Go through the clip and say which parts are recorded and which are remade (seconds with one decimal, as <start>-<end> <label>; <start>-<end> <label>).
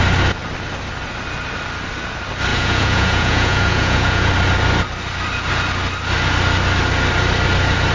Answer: 0.0-2.5 recorded; 2.5-4.3 remade; 4.3-7.9 recorded